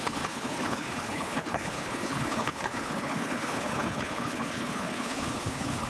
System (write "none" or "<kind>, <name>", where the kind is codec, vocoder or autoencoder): codec, HILCodec